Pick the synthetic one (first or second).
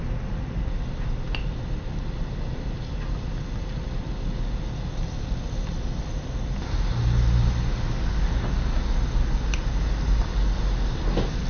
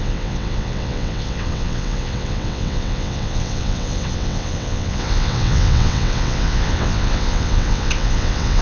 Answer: second